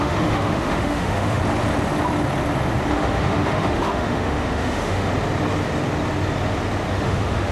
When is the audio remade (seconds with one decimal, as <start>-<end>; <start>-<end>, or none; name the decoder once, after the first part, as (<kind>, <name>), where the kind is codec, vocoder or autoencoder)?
0.0-1.4 (autoencoder, DAC-VAE); 2.9-5.1; 6.9-7.5